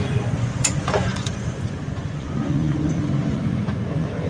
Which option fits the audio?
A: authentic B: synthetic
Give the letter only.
B